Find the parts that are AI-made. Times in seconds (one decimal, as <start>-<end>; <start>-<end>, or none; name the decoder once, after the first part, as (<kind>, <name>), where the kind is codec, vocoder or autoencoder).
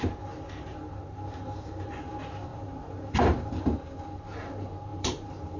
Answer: 0.8-2.1 (vocoder, BigVGAN v2); 2.5-3.6; 4.9-5.6